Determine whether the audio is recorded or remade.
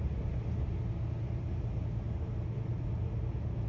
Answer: recorded